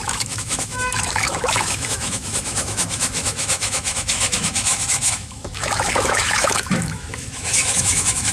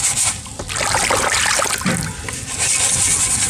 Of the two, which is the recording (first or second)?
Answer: second